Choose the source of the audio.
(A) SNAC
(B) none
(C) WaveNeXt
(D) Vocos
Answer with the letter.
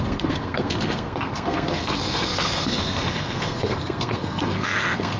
A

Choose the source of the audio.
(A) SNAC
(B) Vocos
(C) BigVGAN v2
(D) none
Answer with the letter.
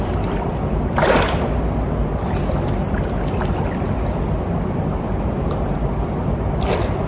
D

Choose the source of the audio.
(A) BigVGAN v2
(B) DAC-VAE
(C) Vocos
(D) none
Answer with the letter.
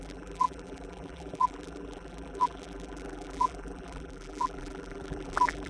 A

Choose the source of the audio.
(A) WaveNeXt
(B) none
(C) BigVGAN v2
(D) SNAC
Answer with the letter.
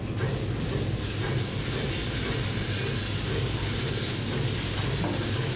B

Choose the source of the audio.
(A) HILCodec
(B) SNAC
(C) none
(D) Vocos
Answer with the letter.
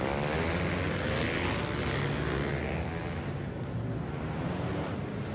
C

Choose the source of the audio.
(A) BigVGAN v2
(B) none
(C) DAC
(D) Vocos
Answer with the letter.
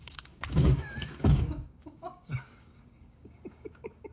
C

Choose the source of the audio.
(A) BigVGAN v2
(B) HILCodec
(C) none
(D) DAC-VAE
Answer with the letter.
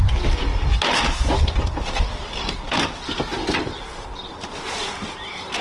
C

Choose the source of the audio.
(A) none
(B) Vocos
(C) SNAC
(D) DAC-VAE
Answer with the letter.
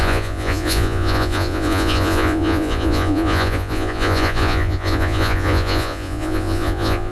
B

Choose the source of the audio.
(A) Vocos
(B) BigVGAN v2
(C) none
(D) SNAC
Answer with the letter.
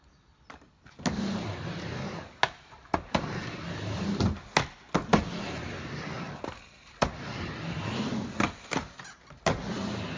C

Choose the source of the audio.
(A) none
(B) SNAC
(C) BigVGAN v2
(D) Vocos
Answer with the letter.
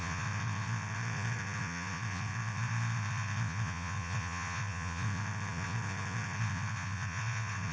D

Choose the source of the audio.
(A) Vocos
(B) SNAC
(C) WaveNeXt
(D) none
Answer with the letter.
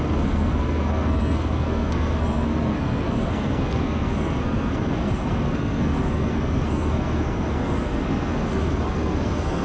B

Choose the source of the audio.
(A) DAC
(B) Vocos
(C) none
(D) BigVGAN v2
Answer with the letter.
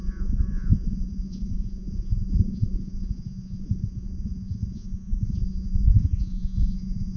B